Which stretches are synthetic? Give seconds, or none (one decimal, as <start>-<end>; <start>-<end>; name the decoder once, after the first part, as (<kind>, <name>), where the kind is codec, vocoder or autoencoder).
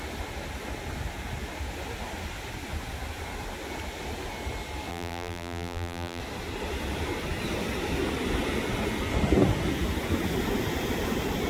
4.9-6.2 (vocoder, BigVGAN v2)